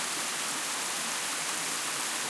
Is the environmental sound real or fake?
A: real